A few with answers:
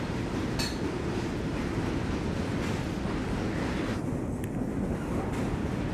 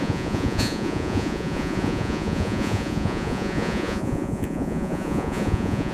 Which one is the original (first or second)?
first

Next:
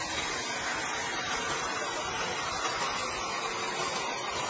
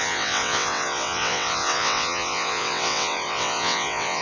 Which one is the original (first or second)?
first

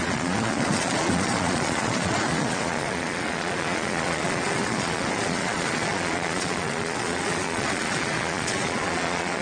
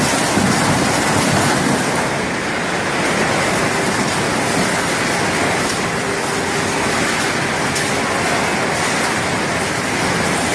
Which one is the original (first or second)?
second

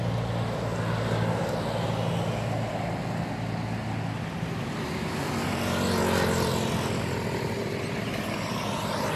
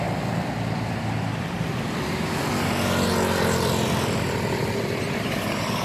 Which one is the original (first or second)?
first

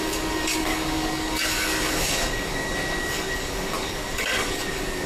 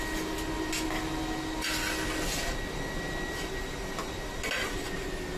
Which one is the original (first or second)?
second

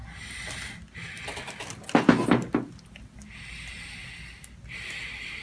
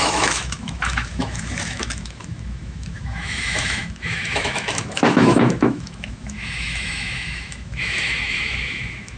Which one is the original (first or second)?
first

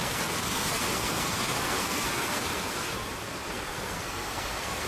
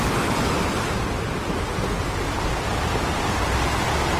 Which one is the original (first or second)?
second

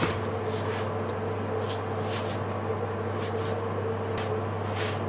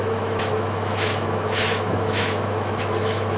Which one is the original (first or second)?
first